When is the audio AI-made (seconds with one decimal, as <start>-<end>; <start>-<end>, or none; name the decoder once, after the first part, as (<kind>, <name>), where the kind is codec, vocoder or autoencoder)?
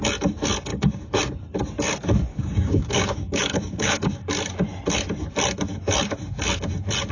0.7-1.2 (codec, DAC); 2.3-4.3